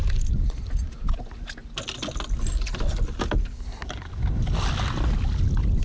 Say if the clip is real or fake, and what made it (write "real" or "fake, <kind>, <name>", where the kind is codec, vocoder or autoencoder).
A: real